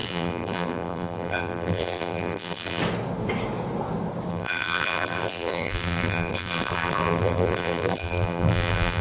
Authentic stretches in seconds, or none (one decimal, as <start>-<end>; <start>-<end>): 2.8-4.3